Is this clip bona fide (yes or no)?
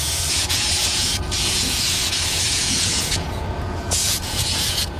no